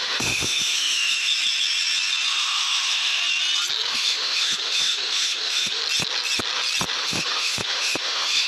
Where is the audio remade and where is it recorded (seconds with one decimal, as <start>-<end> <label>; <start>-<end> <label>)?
0.0-1.3 remade; 1.3-2.3 recorded; 2.3-3.2 remade; 3.2-3.9 recorded; 3.9-5.8 remade; 5.8-7.0 recorded; 7.0-8.5 remade